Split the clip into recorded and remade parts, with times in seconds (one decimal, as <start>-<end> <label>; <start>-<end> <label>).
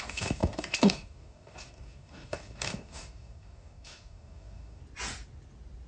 0.0-4.8 remade; 4.8-5.9 recorded